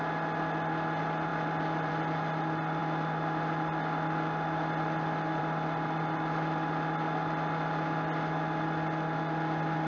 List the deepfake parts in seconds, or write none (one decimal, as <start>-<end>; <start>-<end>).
none